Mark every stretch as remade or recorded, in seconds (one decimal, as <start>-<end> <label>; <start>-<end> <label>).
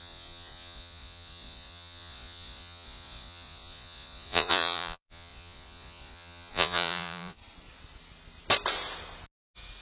0.0-7.4 remade; 7.4-9.8 recorded